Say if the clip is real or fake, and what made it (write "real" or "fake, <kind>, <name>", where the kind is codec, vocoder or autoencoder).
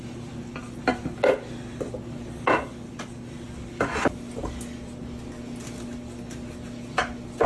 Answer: real